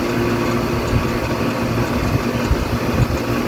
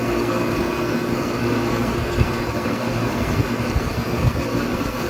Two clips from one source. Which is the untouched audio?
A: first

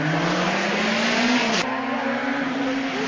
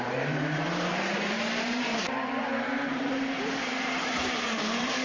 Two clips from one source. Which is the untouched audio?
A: first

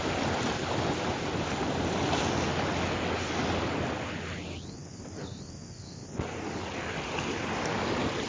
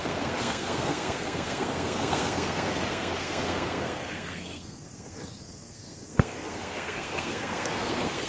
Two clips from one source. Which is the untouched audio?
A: first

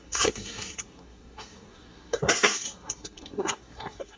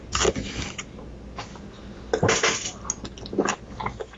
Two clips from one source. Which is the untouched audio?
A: second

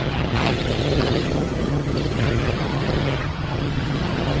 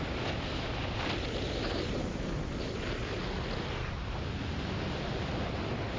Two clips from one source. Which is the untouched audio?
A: second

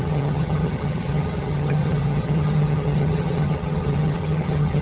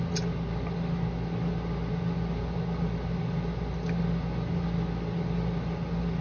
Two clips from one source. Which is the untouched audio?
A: second